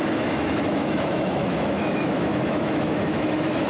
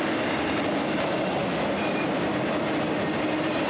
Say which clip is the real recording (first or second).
second